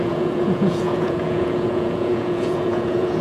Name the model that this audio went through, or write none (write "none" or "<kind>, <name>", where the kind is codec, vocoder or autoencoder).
vocoder, Vocos